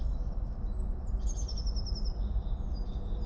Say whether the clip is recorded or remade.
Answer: recorded